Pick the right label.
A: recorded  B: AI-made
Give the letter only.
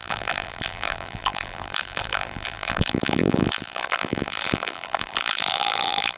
B